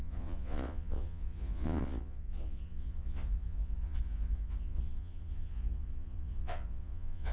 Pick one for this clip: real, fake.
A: fake